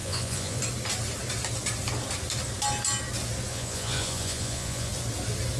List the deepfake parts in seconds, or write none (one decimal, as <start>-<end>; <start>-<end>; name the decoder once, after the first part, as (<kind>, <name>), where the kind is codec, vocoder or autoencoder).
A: 0.0-0.6 (vocoder, Vocos); 3.5-4.9